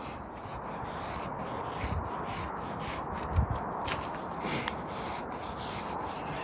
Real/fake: real